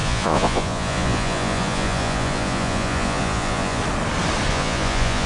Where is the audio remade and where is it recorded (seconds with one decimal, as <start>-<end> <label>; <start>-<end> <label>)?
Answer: 0.0-3.8 remade; 3.8-4.5 recorded; 4.5-5.3 remade